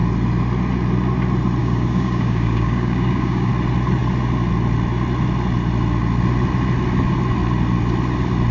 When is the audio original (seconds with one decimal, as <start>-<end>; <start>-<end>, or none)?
0.0-1.6; 3.5-8.5